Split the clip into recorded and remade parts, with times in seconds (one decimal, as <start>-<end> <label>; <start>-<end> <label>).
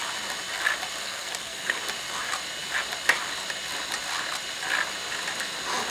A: 0.0-1.0 recorded; 1.0-1.8 remade; 1.8-5.9 recorded